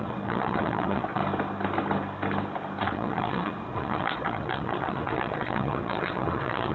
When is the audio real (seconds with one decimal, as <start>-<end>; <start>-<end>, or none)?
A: 1.2-2.8